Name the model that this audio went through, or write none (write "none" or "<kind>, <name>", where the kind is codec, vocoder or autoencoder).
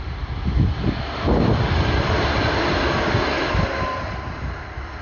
none